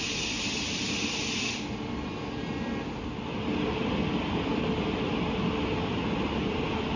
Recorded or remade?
recorded